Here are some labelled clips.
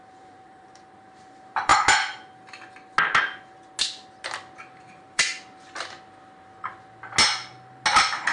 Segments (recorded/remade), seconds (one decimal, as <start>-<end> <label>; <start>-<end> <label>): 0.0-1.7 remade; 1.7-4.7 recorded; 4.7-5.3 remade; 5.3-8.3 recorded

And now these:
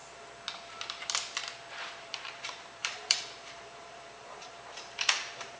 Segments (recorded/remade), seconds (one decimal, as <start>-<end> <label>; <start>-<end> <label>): 0.0-1.9 recorded; 1.9-5.6 remade

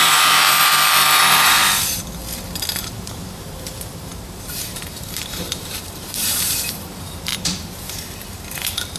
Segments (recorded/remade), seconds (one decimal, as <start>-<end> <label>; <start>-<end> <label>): 0.0-1.6 remade; 1.6-2.8 recorded; 2.8-9.0 remade